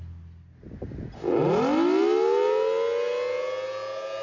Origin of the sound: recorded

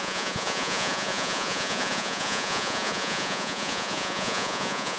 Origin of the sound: remade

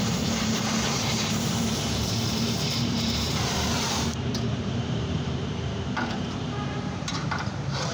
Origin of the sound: remade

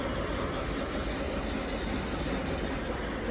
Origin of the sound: recorded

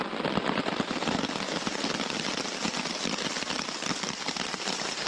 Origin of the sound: recorded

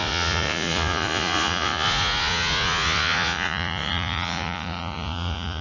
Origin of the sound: remade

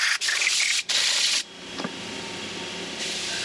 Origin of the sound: recorded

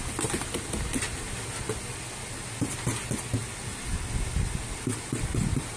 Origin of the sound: recorded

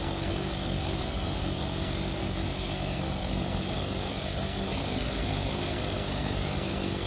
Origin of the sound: remade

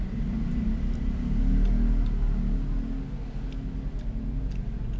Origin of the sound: recorded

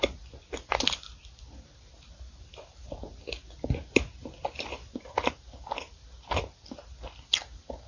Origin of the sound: recorded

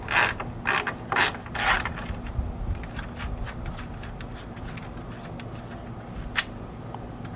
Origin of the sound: recorded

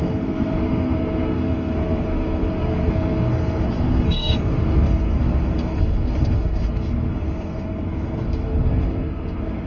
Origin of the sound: remade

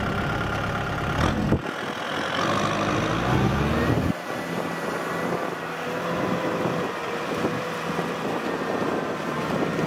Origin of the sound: recorded